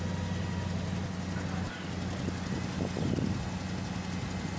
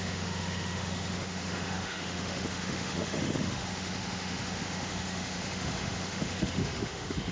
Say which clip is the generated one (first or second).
second